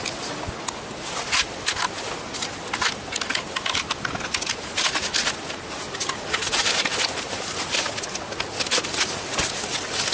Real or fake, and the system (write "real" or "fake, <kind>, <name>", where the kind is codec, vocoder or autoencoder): real